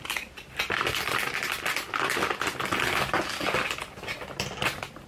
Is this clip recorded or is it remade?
recorded